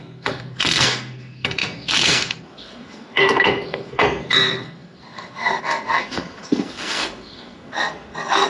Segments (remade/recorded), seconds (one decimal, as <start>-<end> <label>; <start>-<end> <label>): 0.0-8.5 remade